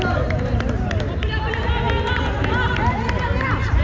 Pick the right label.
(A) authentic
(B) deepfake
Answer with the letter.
A